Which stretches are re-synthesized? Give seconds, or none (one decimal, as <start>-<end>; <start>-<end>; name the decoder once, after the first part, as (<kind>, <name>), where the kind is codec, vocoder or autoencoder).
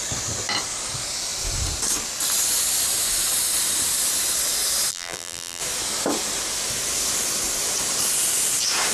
4.9-5.6 (vocoder, BigVGAN v2)